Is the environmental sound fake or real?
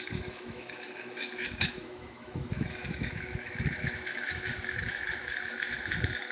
fake